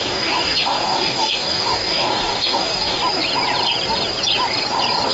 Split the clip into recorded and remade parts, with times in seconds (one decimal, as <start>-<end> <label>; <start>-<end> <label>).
0.0-3.0 remade; 3.0-5.1 recorded